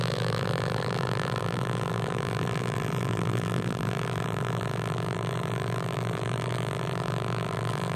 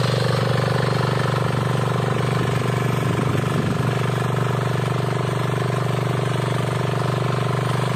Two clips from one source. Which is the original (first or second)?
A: second